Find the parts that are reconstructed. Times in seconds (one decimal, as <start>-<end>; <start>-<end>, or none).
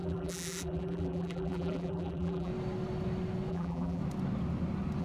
0.0-2.5; 3.5-4.0